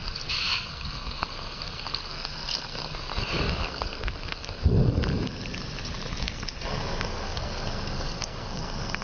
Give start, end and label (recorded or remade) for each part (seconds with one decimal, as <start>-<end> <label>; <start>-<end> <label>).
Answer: 0.0-5.0 remade; 5.0-6.1 recorded; 6.1-9.0 remade